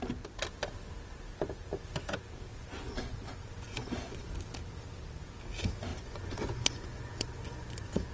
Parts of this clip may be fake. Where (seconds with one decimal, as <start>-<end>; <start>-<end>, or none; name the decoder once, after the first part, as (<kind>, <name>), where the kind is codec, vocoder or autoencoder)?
2.5-4.4 (vocoder, Vocos); 5.9-8.1